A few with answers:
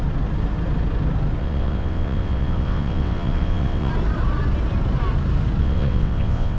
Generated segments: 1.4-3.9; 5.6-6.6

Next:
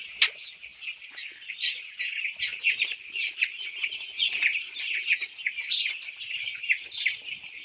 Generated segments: none